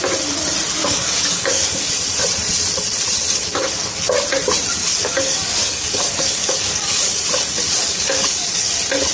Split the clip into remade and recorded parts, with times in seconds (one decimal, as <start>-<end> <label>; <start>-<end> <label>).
0.0-0.8 recorded; 0.8-1.9 remade; 1.9-4.8 recorded; 4.8-7.2 remade; 7.2-7.8 recorded; 7.8-8.7 remade; 8.7-9.1 recorded